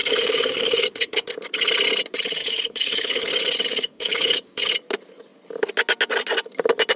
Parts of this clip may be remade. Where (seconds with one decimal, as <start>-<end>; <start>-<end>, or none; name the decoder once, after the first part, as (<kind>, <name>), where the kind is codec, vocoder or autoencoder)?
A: 0.0-1.3 (codec, DAC); 2.4-3.3; 3.7-4.7